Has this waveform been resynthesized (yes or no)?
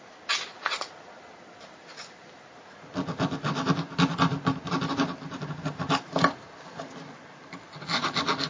no